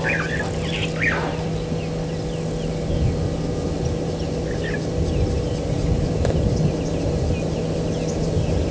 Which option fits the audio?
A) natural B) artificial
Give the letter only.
A